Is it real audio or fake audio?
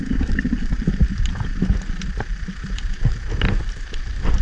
fake